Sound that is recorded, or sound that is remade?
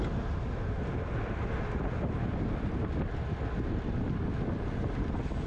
recorded